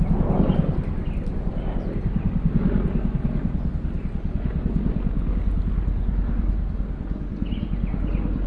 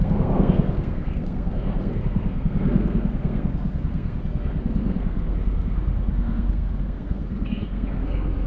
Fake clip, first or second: second